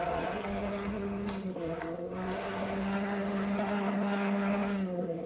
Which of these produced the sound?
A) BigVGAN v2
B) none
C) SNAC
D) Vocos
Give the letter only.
C